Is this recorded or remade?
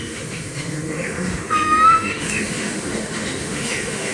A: remade